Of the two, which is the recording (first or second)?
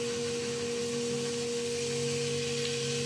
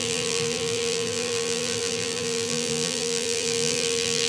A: first